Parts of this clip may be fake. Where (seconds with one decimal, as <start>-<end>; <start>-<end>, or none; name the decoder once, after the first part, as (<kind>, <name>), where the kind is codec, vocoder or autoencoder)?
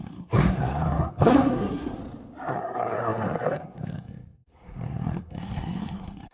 0.0-2.0 (codec, SNAC); 2.5-6.3